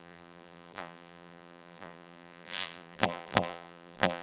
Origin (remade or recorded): remade